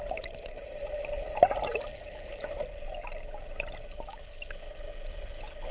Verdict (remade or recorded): recorded